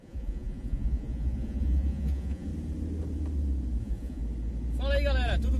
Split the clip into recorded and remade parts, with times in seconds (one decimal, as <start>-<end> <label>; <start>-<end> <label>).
0.0-2.5 remade; 2.5-3.8 recorded; 3.8-4.2 remade; 4.2-5.6 recorded